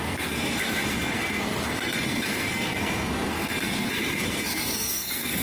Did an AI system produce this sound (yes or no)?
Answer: yes